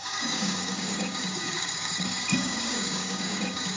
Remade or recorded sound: remade